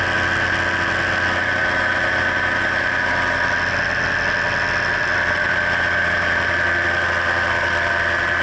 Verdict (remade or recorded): recorded